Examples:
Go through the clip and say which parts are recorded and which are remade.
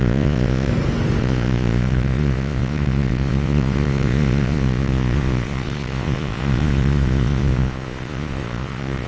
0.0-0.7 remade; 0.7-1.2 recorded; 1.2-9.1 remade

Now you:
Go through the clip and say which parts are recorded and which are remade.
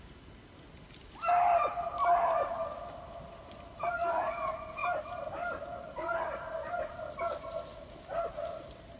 0.0-9.0 recorded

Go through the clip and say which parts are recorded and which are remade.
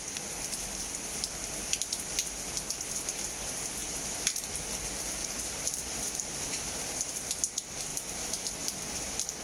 0.0-3.8 recorded; 3.8-4.5 remade; 4.5-5.2 recorded; 5.2-7.0 remade; 7.0-7.9 recorded; 7.9-8.6 remade; 8.6-9.4 recorded